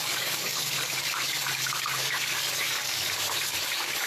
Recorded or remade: remade